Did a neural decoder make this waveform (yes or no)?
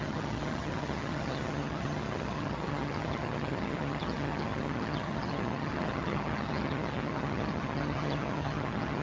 yes